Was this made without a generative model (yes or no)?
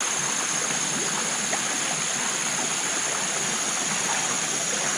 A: yes